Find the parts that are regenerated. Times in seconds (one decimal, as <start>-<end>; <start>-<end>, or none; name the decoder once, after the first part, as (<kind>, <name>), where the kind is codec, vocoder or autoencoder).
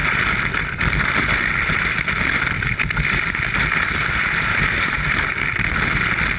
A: 4.2-5.3 (vocoder, BigVGAN v2)